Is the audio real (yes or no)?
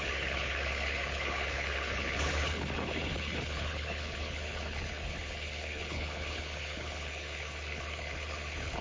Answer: no